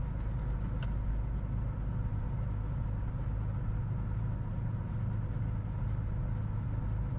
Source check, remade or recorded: recorded